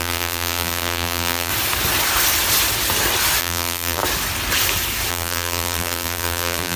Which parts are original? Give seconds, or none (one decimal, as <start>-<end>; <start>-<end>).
1.5-3.4; 4.0-5.1